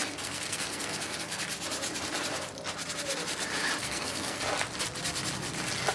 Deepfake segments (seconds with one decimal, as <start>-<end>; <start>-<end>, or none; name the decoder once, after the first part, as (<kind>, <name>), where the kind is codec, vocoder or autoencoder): 0.0-1.4 (codec, SNAC); 3.8-4.4